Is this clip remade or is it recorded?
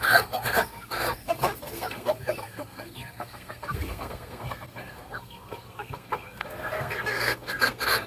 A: remade